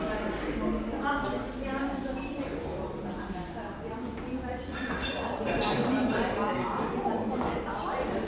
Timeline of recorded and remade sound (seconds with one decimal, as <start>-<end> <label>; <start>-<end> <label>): 0.0-4.5 recorded; 4.5-5.4 remade; 5.4-8.3 recorded